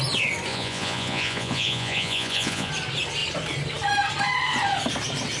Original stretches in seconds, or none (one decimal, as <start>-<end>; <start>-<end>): 0.0-0.5; 2.7-5.4